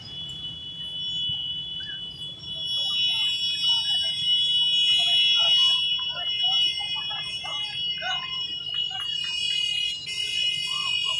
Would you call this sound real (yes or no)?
yes